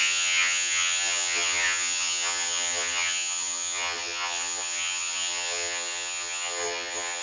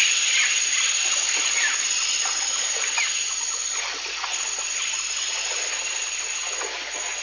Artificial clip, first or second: first